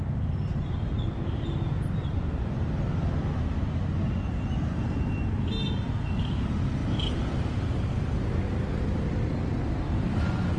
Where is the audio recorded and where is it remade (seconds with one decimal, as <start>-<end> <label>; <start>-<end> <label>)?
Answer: 0.0-2.0 recorded; 2.0-2.5 remade; 2.5-10.6 recorded